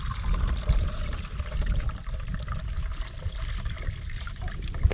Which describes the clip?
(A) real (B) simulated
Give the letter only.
A